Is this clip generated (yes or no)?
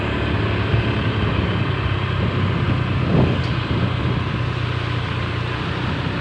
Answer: no